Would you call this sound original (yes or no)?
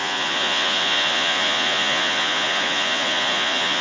no